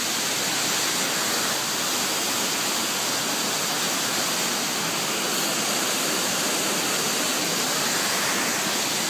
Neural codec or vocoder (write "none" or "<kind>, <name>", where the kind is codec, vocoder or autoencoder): none